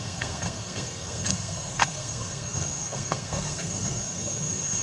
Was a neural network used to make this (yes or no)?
yes